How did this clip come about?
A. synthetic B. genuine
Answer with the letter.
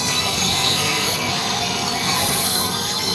A